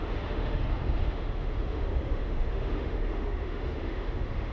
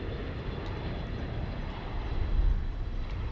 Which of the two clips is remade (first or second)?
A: first